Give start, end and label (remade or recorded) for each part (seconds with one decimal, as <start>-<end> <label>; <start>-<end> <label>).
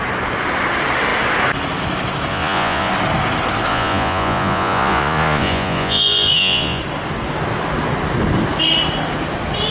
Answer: 0.0-2.3 recorded; 2.3-2.9 remade; 2.9-3.7 recorded; 3.7-6.8 remade; 6.8-9.7 recorded